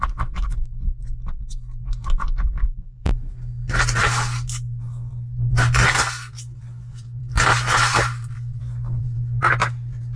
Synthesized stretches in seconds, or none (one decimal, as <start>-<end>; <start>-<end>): 2.6-3.1